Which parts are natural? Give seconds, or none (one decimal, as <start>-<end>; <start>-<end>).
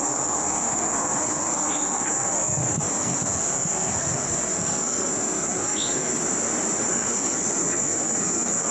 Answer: 6.1-6.9